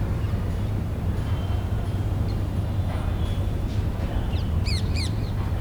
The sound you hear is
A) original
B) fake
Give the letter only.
B